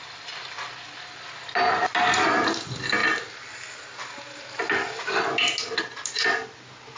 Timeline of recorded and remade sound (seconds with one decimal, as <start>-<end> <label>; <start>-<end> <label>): 0.0-7.0 recorded